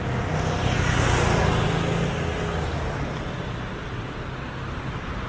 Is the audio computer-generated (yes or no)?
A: no